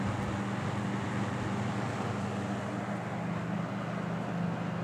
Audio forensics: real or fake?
real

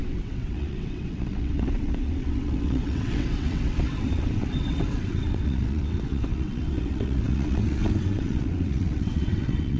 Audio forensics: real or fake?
fake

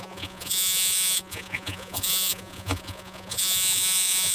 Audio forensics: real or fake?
fake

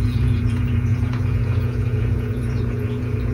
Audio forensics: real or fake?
fake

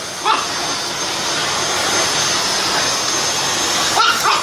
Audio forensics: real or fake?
real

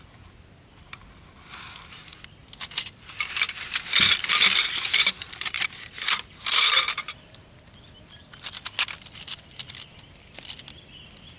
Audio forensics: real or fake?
real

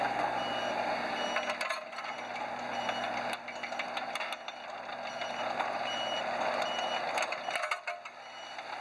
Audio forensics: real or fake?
real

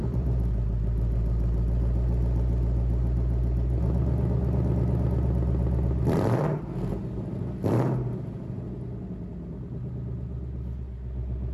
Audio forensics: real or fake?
real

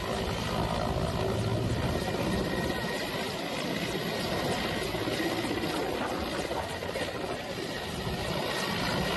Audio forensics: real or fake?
real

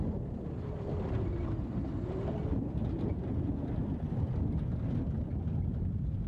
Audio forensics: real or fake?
real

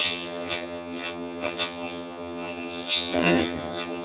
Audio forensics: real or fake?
fake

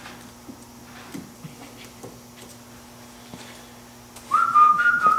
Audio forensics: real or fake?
real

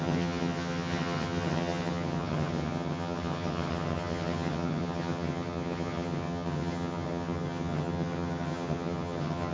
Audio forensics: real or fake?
fake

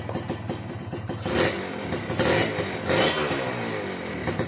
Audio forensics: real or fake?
real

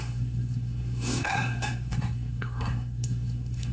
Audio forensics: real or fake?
fake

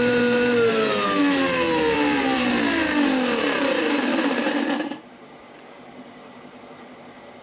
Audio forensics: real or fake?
fake